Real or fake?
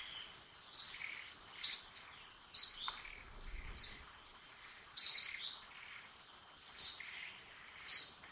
real